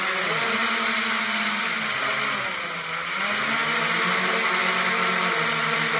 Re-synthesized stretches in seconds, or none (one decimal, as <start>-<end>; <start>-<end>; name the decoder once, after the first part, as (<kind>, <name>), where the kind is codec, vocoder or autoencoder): 0.6-1.1 (vocoder, BigVGAN v2)